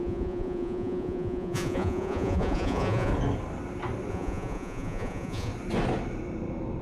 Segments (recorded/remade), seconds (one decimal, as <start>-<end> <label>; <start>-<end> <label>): 0.0-3.1 remade; 3.1-4.1 recorded; 4.1-5.5 remade; 5.5-6.8 recorded